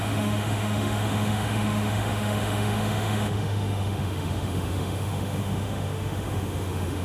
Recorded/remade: remade